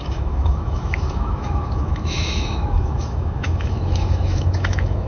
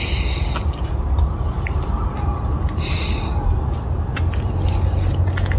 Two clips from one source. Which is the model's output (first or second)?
first